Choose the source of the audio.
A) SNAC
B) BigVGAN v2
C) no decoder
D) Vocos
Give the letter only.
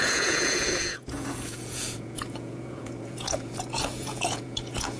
D